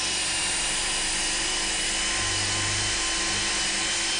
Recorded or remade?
recorded